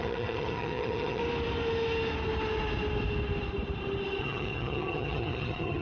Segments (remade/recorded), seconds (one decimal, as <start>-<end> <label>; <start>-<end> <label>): 0.0-1.2 remade; 1.2-4.2 recorded; 4.2-5.8 remade